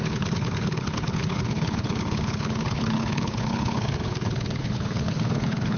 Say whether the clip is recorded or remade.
remade